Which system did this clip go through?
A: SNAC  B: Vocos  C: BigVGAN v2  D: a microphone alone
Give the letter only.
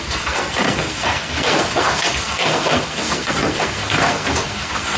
A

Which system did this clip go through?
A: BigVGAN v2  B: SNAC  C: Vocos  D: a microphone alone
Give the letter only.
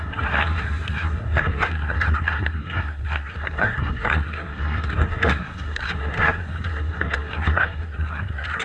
B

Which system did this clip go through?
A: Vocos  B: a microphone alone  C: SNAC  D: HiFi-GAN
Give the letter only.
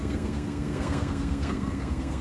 C